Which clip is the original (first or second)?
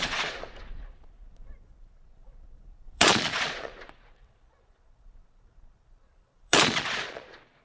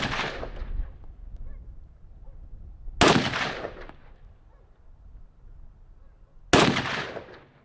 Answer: second